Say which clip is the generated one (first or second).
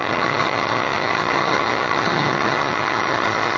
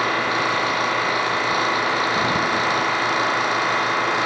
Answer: first